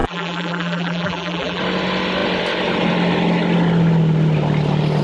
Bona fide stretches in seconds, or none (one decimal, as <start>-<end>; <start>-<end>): 1.6-5.0